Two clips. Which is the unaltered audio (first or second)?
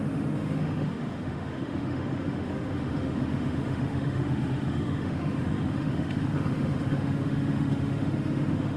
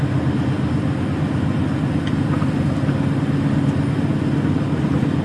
second